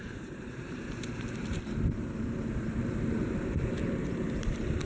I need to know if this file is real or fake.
fake